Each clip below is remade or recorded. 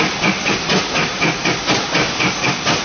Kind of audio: recorded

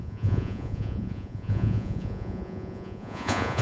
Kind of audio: remade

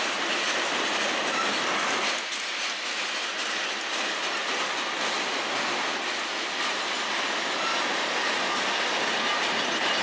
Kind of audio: recorded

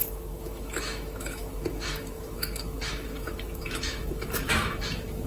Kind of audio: remade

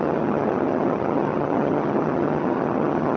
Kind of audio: remade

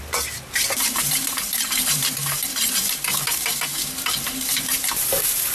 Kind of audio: remade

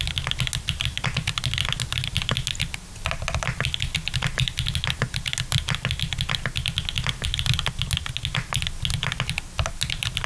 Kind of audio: recorded